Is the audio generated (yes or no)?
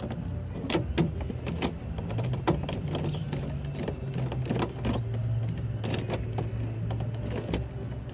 no